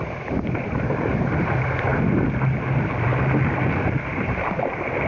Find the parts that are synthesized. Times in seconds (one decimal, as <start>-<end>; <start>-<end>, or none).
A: 0.0-1.9; 2.6-3.1; 4.2-5.1